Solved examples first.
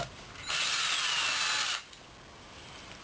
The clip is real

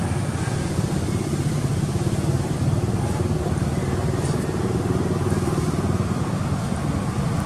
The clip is real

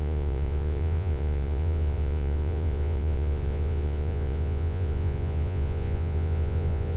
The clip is fake